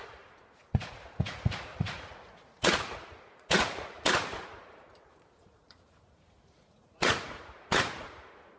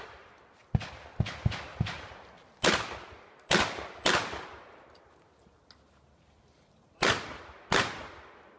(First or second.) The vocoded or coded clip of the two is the first